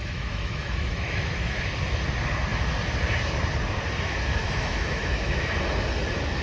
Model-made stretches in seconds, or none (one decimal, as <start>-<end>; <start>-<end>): 0.0-1.6; 4.4-5.5